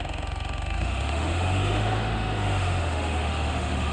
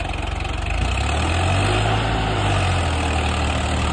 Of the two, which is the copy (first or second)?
first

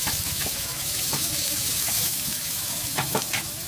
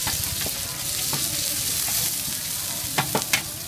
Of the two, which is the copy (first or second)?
first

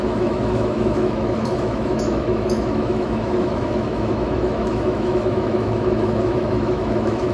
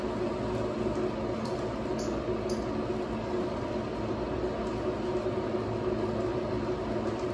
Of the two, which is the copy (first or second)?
first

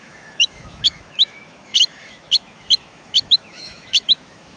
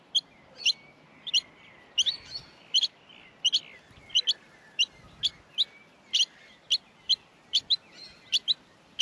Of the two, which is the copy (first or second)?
first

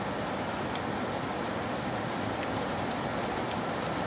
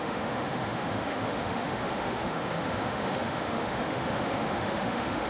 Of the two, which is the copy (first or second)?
second